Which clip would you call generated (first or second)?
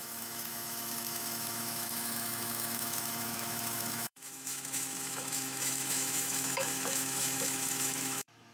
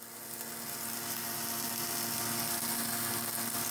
first